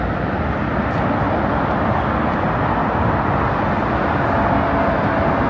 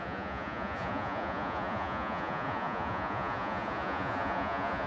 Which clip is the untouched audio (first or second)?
first